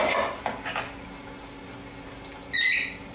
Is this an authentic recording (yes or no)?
yes